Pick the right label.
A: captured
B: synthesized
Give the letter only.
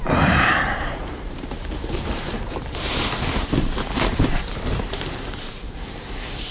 B